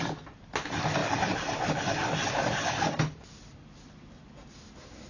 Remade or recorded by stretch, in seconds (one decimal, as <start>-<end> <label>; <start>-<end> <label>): 0.0-5.1 recorded